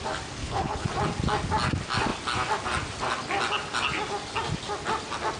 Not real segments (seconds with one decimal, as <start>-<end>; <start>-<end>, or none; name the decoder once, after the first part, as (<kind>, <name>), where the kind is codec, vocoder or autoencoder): 0.4-0.9 (codec, HILCodec)